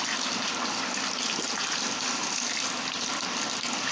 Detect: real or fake real